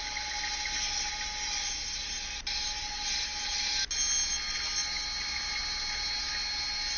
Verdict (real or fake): real